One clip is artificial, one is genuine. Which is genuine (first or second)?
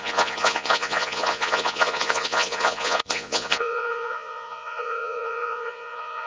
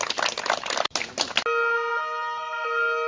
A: second